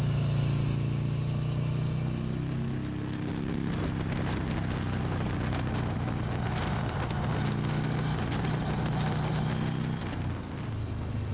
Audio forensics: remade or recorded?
recorded